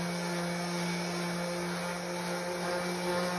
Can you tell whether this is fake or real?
real